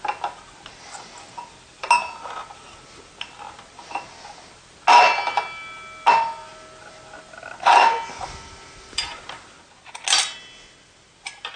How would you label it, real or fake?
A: real